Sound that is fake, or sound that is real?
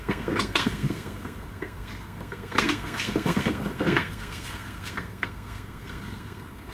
fake